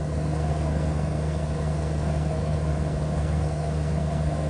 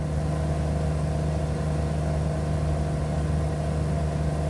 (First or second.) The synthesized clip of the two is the first